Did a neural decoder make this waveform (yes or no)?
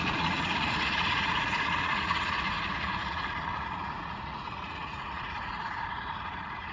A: yes